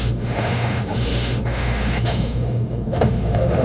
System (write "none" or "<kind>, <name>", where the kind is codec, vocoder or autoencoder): autoencoder, DAC-VAE